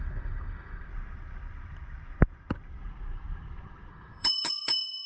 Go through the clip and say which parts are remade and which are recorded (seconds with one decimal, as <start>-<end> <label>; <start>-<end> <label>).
0.0-0.9 remade; 0.9-3.9 recorded; 3.9-5.1 remade

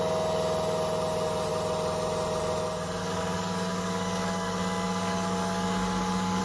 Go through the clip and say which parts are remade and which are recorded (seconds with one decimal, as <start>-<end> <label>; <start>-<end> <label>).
0.0-3.0 recorded; 3.0-6.4 remade

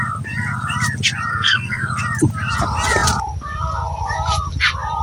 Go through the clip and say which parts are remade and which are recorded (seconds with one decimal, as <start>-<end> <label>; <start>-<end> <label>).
0.0-1.3 recorded; 1.3-1.9 remade; 1.9-5.0 recorded